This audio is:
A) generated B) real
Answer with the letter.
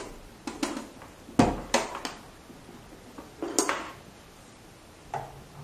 B